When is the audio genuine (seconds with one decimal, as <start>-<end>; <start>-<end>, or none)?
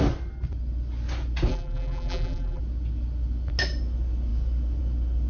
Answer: 0.0-1.5; 2.6-5.3